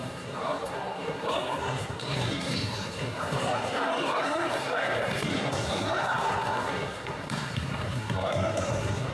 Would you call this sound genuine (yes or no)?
no